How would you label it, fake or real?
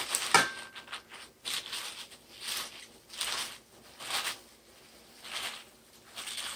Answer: real